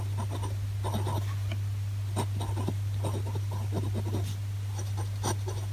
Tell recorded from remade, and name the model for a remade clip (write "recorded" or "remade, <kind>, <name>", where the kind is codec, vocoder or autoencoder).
recorded